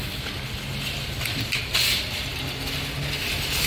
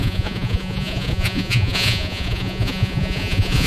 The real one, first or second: first